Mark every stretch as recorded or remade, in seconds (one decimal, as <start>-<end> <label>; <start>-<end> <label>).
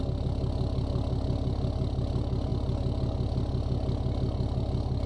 0.0-5.1 recorded